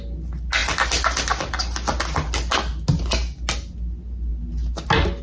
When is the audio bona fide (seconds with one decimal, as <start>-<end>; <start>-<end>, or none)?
0.0-5.2